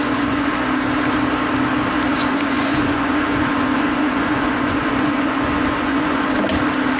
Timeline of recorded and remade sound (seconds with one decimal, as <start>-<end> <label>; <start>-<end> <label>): 0.0-0.5 remade; 0.5-2.1 recorded; 2.1-6.3 remade; 6.3-7.0 recorded